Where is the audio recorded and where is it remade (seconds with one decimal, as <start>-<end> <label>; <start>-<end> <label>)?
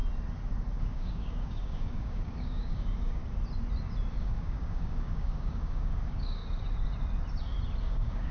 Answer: 0.0-0.8 recorded; 0.8-3.2 remade; 3.2-4.1 recorded; 4.1-6.4 remade; 6.4-7.8 recorded; 7.8-8.3 remade